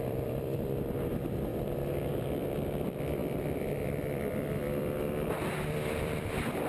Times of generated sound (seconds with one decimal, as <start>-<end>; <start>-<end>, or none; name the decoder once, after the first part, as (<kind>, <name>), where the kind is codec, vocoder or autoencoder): 0.0-1.5 (vocoder, BigVGAN v2); 2.1-6.7